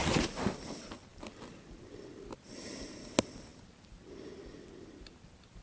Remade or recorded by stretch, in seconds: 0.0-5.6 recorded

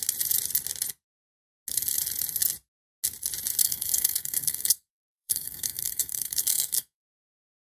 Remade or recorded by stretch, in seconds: 0.0-3.6 recorded; 3.6-7.2 remade; 7.2-7.8 recorded

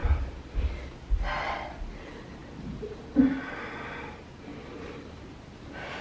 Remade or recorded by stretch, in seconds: 0.0-0.7 remade; 0.7-2.4 recorded; 2.4-3.0 remade; 3.0-4.5 recorded; 4.5-6.0 remade

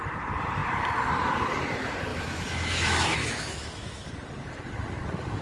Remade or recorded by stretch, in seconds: 0.0-2.1 recorded; 2.1-4.1 remade; 4.1-5.4 recorded

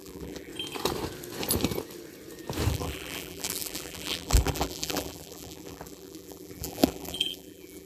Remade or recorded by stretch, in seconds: 0.0-0.5 remade; 0.5-2.7 recorded; 2.7-7.9 remade

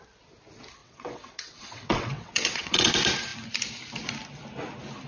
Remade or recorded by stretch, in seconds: 0.0-0.8 recorded; 0.8-2.9 remade; 2.9-5.1 recorded

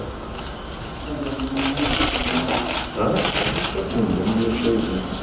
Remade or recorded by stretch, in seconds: 0.0-5.2 recorded